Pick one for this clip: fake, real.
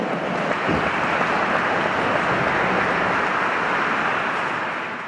real